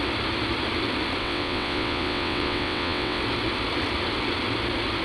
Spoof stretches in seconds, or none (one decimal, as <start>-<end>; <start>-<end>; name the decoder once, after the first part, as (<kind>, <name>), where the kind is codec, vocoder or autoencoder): 1.2-3.2 (vocoder, WaveNeXt)